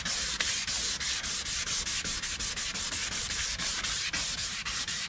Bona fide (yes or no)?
yes